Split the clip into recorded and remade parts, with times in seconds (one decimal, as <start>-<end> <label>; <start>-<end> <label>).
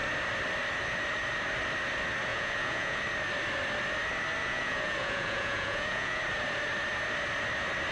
0.0-2.3 recorded; 2.3-3.0 remade; 3.0-4.4 recorded; 4.4-6.2 remade; 6.2-7.9 recorded